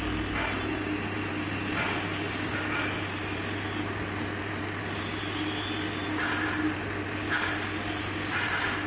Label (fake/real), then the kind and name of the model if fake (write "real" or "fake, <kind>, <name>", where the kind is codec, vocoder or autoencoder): real